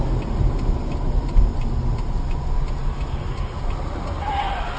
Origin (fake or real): real